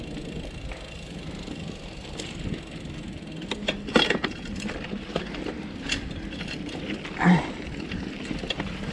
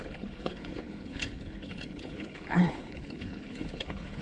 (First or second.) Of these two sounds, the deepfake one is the second